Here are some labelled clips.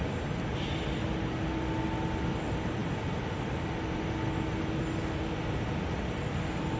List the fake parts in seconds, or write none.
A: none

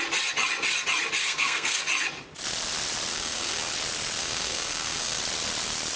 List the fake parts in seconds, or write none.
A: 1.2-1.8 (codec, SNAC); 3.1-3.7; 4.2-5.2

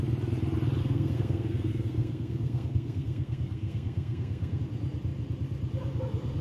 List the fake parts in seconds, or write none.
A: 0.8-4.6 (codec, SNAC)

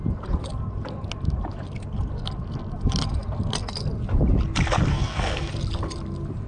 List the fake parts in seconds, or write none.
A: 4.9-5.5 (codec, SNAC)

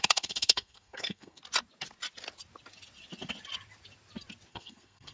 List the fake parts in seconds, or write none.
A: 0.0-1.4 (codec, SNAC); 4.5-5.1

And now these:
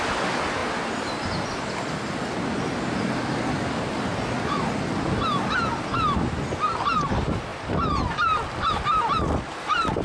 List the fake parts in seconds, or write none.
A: none

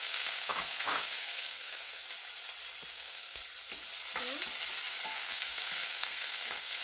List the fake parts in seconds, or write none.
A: 0.0-2.0 (codec, SNAC); 2.9-3.4; 5.1-6.8